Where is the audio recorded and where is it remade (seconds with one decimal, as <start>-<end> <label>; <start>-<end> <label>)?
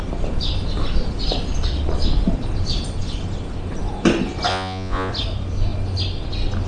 0.0-4.5 recorded; 4.5-5.1 remade; 5.1-6.7 recorded